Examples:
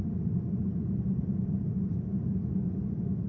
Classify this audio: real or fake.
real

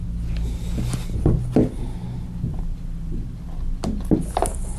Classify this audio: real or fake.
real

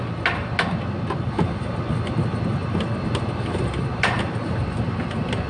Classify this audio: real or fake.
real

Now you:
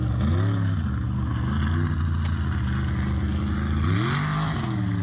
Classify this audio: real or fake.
real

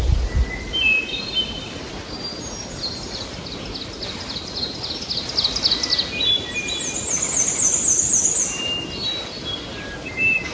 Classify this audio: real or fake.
real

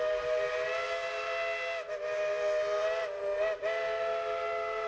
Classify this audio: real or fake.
real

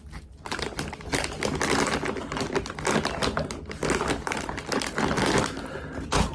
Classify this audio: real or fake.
real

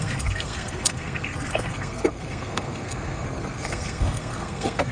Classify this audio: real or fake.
fake